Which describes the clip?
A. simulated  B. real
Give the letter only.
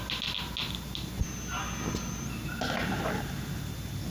B